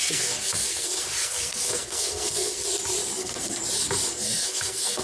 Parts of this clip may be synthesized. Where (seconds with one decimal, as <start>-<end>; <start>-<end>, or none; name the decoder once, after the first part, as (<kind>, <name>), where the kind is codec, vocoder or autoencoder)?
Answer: 0.0-2.6 (codec, SNAC); 3.2-3.6; 4.1-5.0